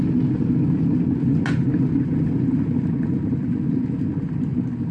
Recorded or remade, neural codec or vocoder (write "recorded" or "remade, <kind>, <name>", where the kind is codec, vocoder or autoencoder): recorded